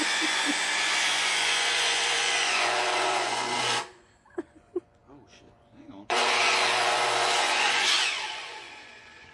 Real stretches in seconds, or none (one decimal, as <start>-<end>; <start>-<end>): none